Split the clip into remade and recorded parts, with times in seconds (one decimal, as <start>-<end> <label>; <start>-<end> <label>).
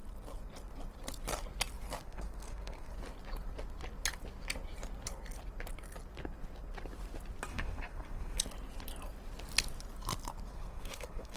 0.0-2.0 recorded; 2.0-2.9 remade; 2.9-7.5 recorded; 7.5-8.4 remade; 8.4-10.5 recorded; 10.5-11.4 remade